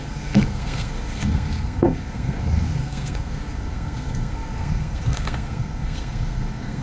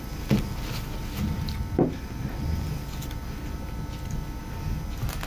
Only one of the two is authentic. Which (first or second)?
second